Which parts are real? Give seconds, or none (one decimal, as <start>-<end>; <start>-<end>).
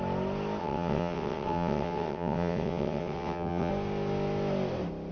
0.0-0.6; 3.7-5.1